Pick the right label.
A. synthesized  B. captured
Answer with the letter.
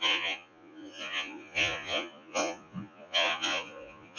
A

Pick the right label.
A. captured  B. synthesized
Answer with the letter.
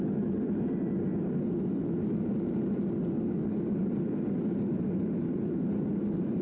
A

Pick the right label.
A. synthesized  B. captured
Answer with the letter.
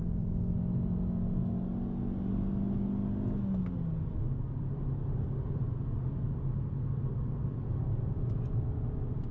B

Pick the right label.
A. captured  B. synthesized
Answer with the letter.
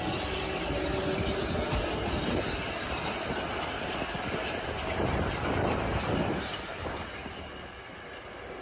A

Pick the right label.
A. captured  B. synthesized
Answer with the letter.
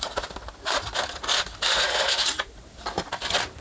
A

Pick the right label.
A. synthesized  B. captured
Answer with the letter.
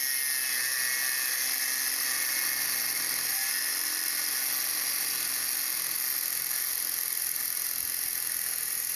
B